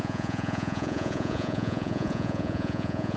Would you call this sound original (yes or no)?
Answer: no